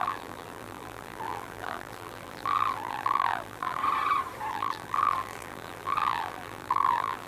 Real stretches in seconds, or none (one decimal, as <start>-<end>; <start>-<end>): 3.8-4.5